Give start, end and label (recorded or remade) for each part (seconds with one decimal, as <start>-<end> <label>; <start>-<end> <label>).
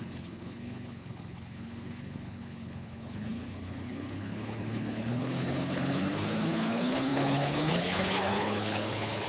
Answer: 0.0-9.3 remade